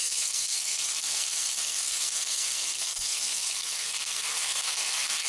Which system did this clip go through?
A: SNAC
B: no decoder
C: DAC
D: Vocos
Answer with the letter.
A